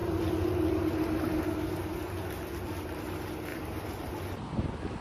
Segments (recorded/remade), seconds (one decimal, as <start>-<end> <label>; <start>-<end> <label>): 0.0-3.5 recorded; 3.5-4.4 remade; 4.4-5.0 recorded